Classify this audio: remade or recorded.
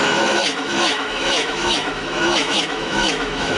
remade